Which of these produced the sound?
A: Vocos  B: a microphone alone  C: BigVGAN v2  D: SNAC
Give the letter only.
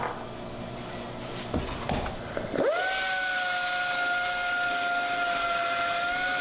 B